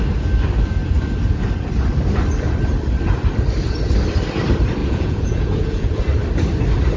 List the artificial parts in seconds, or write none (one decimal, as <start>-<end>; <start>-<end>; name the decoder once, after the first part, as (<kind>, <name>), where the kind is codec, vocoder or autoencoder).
4.8-6.0 (vocoder, Vocos)